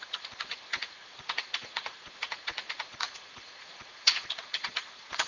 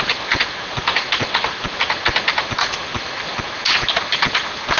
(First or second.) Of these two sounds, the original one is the second